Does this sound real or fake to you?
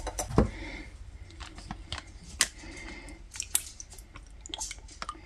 real